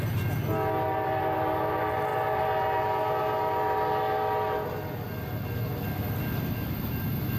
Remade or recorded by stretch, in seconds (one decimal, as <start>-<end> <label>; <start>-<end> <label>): 0.0-7.4 recorded